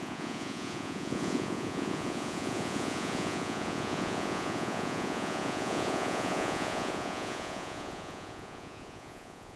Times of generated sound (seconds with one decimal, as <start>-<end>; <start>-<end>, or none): 0.0-9.6